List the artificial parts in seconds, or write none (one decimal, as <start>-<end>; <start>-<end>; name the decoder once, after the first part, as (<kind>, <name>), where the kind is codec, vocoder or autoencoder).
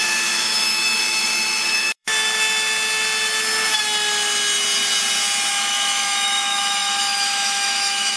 0.0-2.1 (autoencoder, DAC-VAE); 5.5-8.2